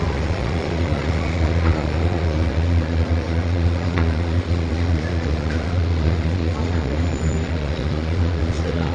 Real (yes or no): no